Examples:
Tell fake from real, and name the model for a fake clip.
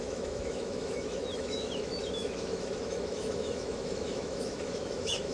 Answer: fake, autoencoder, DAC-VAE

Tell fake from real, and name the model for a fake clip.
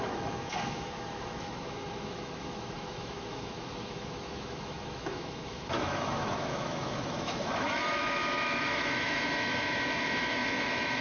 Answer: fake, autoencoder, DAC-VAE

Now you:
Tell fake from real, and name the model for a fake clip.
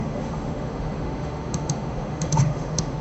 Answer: fake, autoencoder, DAC-VAE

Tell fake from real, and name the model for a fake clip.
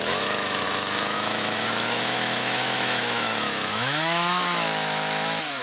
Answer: fake, autoencoder, DAC-VAE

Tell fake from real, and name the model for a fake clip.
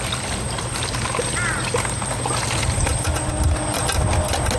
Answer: real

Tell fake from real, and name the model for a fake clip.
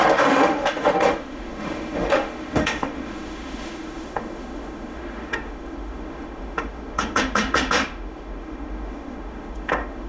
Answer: fake, autoencoder, DAC-VAE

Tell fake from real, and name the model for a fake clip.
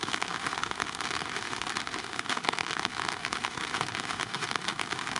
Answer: fake, autoencoder, DAC-VAE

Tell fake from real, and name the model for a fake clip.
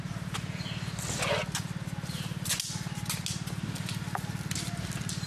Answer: real